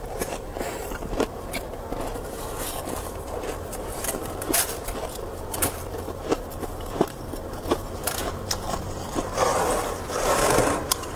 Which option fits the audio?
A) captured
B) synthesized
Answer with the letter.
B